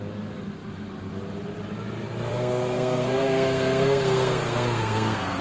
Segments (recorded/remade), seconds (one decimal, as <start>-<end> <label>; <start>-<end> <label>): 0.0-2.3 recorded; 2.3-5.4 remade